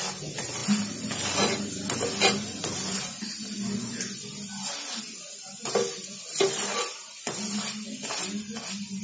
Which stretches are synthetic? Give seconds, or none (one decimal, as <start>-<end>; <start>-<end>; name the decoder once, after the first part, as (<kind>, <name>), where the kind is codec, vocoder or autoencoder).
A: none